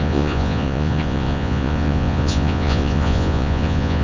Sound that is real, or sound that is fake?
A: fake